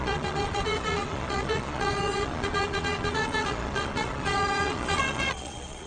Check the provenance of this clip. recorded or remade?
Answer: remade